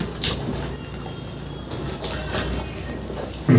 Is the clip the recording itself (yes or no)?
yes